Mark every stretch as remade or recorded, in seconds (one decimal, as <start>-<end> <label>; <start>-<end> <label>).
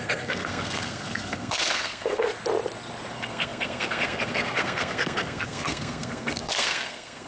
0.0-2.3 remade; 2.3-3.1 recorded; 3.1-7.3 remade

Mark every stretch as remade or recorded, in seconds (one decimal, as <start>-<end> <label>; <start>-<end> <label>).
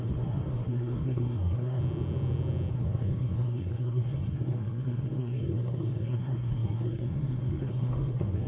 0.0-1.8 remade; 1.8-2.7 recorded; 2.7-8.5 remade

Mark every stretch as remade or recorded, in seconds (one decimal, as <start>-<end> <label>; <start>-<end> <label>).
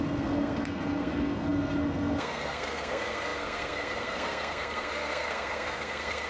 0.0-6.3 remade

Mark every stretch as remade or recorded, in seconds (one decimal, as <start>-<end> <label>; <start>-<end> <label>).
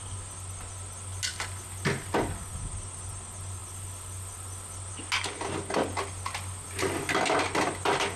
0.0-8.2 recorded